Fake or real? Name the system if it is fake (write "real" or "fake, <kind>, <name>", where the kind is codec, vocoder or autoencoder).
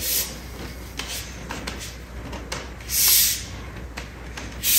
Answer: real